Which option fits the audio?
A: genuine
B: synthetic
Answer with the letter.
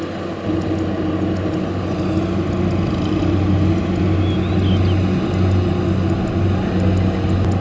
A